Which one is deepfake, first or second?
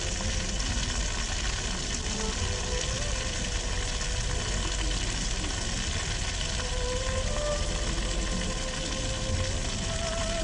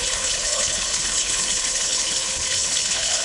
second